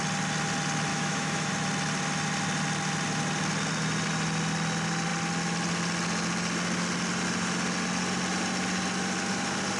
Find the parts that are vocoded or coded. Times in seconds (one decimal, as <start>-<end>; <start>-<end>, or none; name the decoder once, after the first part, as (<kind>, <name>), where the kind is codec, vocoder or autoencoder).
0.9-1.5 (autoencoder, DAC-VAE)

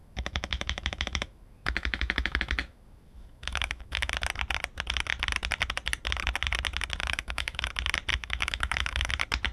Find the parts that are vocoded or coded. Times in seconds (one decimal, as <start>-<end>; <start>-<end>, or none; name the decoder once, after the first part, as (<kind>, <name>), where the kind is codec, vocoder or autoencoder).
0.0-4.1 (autoencoder, DAC-VAE); 7.0-7.7; 8.1-9.1

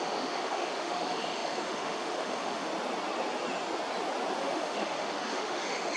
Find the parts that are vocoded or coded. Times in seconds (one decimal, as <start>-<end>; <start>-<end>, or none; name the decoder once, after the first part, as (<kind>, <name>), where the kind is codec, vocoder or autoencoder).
0.0-2.7 (autoencoder, DAC-VAE); 4.4-6.0

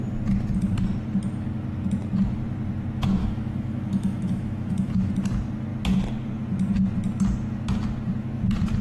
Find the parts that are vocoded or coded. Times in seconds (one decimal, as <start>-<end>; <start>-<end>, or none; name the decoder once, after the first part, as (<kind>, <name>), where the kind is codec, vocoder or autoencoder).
3.2-5.1 (autoencoder, DAC-VAE)